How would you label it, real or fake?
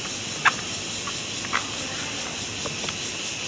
real